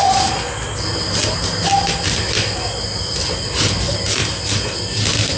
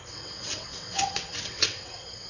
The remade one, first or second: second